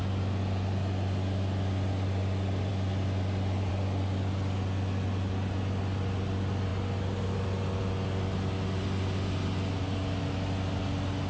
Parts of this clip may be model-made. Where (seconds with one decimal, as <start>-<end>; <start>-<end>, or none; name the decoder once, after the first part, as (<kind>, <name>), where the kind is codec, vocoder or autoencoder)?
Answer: none